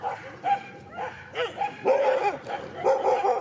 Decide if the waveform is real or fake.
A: fake